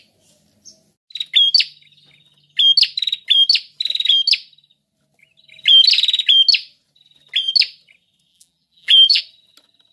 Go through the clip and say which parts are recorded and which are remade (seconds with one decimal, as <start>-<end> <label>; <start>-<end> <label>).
0.0-8.3 recorded; 8.3-9.2 remade; 9.2-9.9 recorded